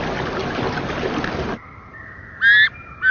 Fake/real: real